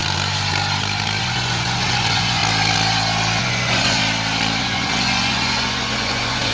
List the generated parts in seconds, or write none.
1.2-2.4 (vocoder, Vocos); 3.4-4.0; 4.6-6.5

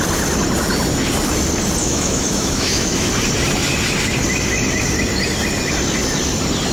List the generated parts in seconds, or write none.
1.8-3.1 (autoencoder, DAC-VAE)

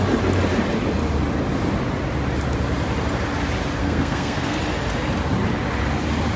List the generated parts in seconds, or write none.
3.8-4.6 (codec, SNAC)

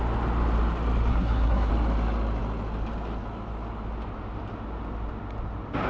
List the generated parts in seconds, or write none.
1.1-1.7 (codec, SNAC)

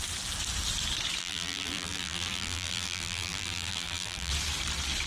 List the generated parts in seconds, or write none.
1.2-4.3 (vocoder, BigVGAN v2)

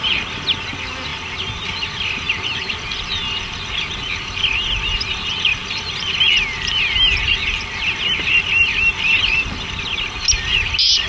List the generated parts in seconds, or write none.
none

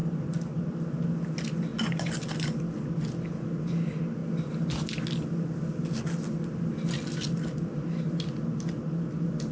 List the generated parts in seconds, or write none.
none

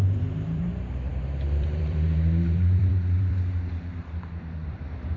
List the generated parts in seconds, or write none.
0.0-5.2 (vocoder, BigVGAN v2)